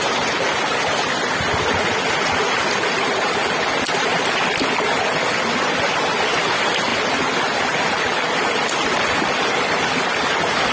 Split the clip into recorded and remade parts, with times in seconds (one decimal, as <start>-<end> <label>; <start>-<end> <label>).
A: 0.0-10.7 recorded